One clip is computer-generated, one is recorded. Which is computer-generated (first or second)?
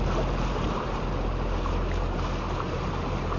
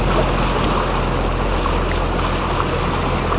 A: first